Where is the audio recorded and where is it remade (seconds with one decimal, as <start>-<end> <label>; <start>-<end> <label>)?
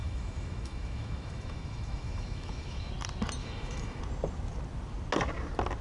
0.0-2.9 remade; 2.9-3.4 recorded; 3.4-4.0 remade; 4.0-5.8 recorded